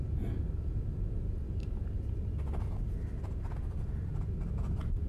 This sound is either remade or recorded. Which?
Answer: recorded